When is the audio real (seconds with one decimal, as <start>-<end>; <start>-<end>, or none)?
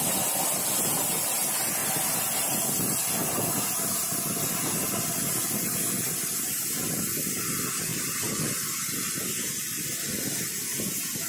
0.0-7.9; 9.3-11.3